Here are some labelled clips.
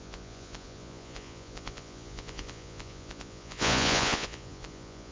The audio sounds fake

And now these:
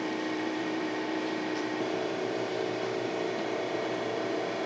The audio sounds fake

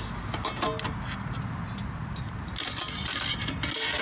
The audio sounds real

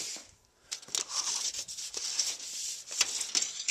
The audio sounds real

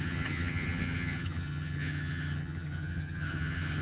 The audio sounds fake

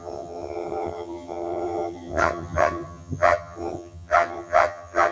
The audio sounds fake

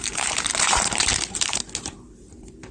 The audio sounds fake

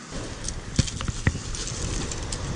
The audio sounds real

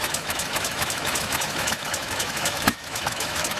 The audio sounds fake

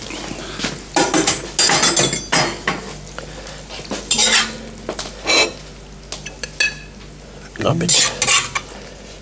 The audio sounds real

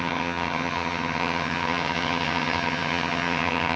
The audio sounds fake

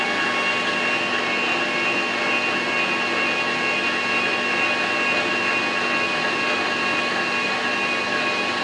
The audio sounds real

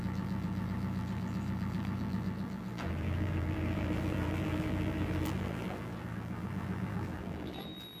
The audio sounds fake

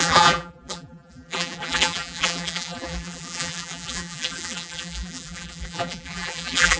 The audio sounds fake